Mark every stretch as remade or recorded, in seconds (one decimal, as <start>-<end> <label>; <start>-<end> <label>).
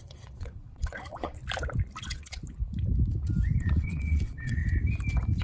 0.0-1.4 remade; 1.4-2.0 recorded; 2.0-2.4 remade; 2.4-3.6 recorded; 3.6-4.6 remade; 4.6-5.4 recorded